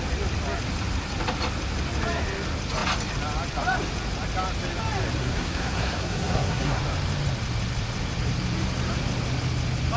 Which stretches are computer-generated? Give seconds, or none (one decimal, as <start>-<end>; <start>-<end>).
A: 5.2-6.8

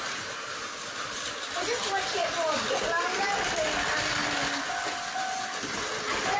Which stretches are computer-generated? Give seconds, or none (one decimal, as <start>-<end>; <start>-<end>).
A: none